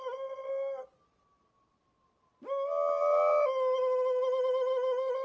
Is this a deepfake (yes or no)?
no